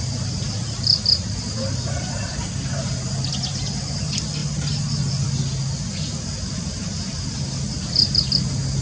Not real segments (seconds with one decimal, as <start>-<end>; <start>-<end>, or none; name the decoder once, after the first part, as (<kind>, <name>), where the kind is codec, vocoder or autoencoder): 0.0-4.4 (vocoder, BigVGAN v2); 6.2-8.8